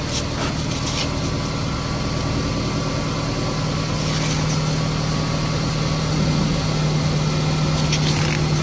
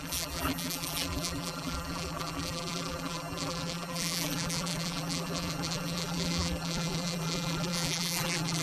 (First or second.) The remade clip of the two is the second